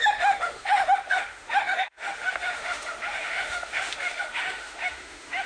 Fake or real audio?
fake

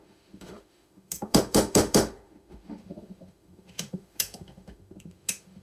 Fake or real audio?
fake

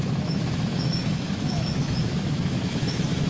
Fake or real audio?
fake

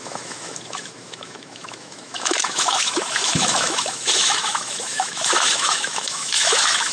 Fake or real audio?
fake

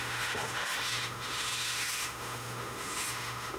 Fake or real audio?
fake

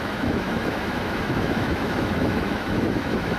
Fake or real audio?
fake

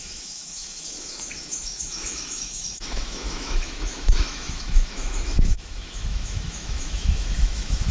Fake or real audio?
fake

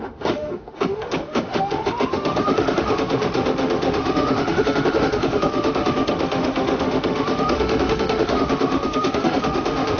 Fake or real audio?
fake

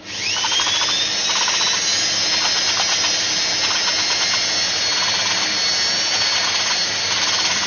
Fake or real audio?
real